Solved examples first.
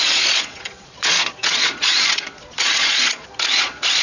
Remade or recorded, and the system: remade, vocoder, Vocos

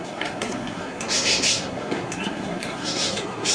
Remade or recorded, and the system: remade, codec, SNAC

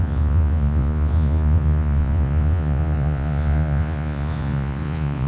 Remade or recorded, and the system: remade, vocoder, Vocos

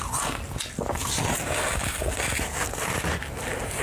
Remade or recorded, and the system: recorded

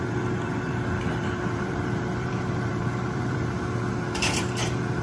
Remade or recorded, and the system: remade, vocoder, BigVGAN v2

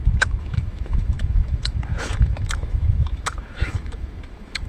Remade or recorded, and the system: remade, autoencoder, DAC-VAE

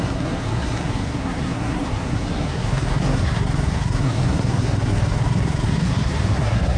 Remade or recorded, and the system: remade, codec, SNAC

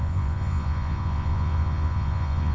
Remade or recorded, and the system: remade, vocoder, Vocos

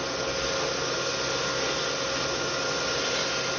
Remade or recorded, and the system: recorded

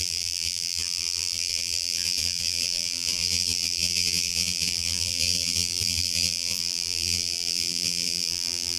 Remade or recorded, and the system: remade, vocoder, BigVGAN v2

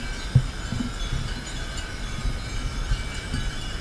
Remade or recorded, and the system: recorded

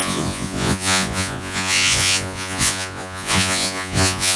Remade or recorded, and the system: remade, vocoder, Vocos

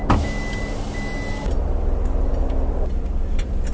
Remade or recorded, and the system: recorded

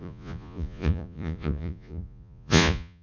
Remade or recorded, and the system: remade, vocoder, Vocos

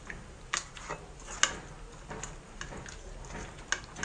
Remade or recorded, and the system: recorded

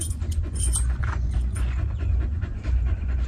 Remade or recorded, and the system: remade, vocoder, Vocos